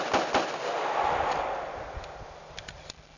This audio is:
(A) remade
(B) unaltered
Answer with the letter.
B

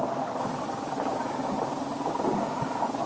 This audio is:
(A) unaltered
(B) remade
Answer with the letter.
A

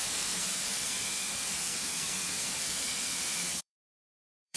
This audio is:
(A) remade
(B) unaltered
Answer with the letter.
A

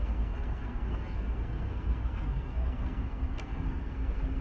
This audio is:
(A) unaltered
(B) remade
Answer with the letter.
B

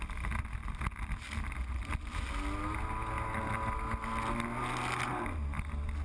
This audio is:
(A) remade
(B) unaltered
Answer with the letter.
B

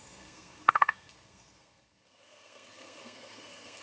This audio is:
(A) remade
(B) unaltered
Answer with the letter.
A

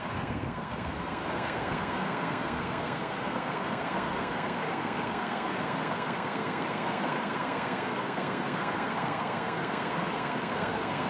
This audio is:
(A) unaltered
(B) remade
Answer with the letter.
B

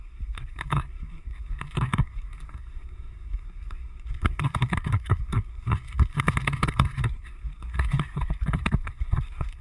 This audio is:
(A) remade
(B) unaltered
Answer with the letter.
A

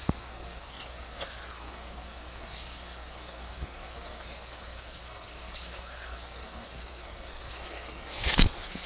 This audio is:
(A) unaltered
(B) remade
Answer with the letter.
B